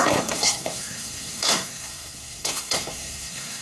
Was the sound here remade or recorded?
remade